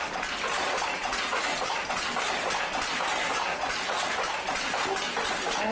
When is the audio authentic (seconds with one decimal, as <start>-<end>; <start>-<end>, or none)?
0.0-0.9; 1.9-3.5; 4.1-5.7